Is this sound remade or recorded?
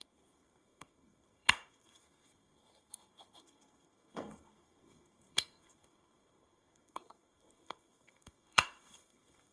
remade